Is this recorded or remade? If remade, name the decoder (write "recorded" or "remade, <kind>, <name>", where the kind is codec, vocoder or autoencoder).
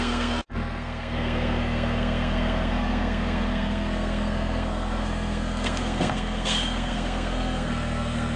remade, codec, SNAC